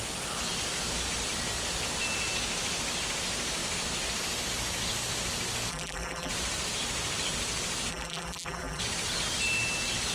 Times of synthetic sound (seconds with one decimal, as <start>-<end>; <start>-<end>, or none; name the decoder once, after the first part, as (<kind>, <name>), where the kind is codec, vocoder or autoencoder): 5.7-6.3 (vocoder, BigVGAN v2); 7.9-8.8